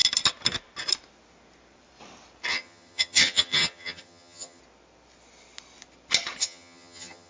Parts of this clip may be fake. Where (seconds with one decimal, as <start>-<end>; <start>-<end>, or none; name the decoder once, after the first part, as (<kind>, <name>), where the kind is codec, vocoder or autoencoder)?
2.5-4.6 (vocoder, HiFi-GAN); 6.4-7.3